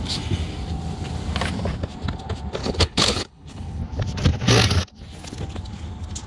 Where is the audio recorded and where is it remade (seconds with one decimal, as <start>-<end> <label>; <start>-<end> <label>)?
0.0-2.6 recorded; 2.6-3.8 remade; 3.8-6.3 recorded